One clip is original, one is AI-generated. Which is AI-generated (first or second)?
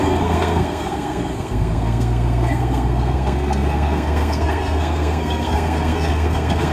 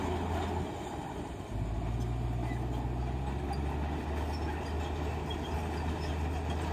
first